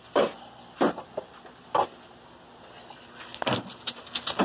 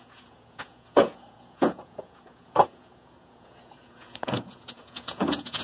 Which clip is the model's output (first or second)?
second